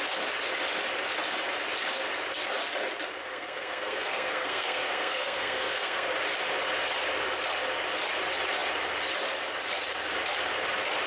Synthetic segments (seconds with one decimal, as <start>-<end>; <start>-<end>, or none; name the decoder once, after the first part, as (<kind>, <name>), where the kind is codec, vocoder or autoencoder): 3.3-6.1 (codec, SNAC)